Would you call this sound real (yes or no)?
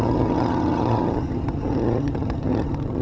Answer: no